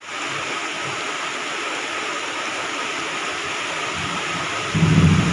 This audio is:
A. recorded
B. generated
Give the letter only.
A